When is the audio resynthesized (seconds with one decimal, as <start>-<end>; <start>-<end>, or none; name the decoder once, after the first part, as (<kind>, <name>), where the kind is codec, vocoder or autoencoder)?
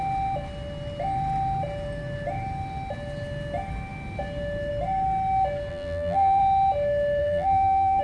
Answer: 5.7-6.4 (vocoder, BigVGAN v2); 7.2-8.0